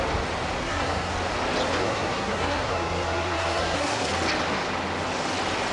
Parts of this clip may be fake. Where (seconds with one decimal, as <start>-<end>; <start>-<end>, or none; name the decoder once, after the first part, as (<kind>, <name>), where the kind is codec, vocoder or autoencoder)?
0.6-1.1 (codec, SNAC); 1.8-4.1